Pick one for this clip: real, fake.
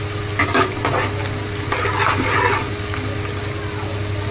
real